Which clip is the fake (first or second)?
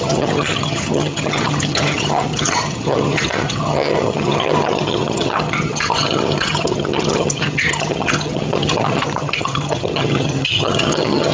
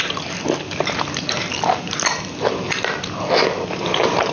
first